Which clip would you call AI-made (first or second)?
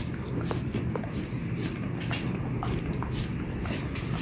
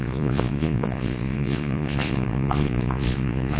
second